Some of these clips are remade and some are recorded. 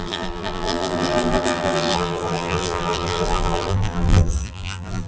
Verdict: remade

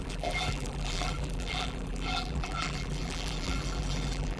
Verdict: remade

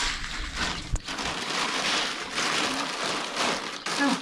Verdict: recorded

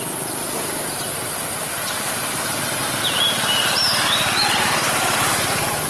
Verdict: remade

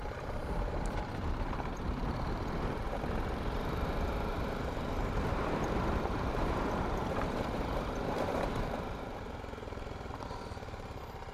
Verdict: remade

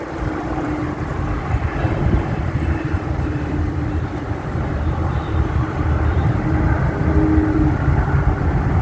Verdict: remade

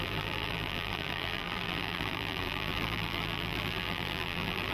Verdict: remade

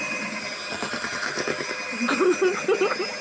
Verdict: remade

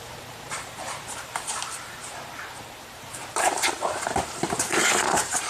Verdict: remade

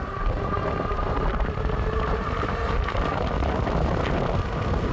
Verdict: recorded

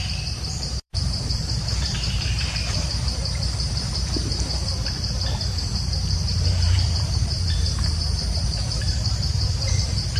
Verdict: remade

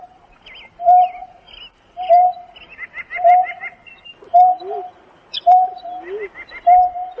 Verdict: recorded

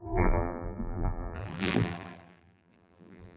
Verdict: remade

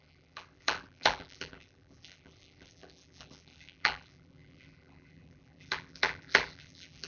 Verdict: remade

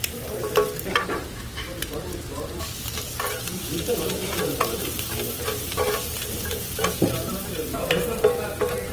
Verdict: remade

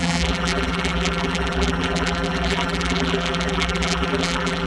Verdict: remade